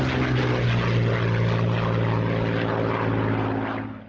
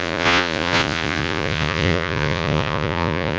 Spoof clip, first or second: second